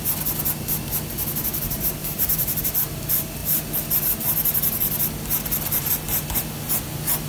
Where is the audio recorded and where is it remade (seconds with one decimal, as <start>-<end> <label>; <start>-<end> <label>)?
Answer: 0.0-2.0 recorded; 2.0-2.6 remade; 2.6-7.3 recorded